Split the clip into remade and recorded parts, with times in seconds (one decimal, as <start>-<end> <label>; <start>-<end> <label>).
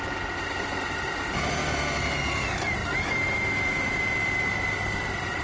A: 0.0-5.4 recorded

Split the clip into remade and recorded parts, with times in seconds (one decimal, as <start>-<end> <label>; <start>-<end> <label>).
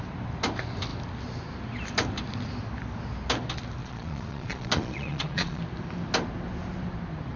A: 0.0-3.8 recorded; 3.8-5.6 remade; 5.6-7.4 recorded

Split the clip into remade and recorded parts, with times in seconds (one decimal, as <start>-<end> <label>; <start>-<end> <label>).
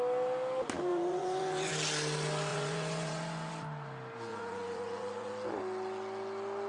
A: 0.0-0.9 recorded; 0.9-1.7 remade; 1.7-2.5 recorded; 2.5-3.5 remade; 3.5-4.3 recorded; 4.3-5.3 remade; 5.3-6.7 recorded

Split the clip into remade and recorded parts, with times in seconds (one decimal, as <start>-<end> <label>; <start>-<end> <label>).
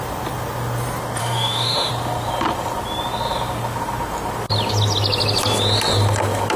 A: 0.0-1.2 recorded; 1.2-1.9 remade; 1.9-6.6 recorded